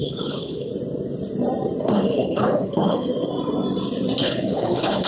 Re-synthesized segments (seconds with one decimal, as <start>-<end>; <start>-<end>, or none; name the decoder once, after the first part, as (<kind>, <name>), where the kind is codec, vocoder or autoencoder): 0.0-0.7 (codec, HILCodec); 1.8-3.1; 4.2-5.1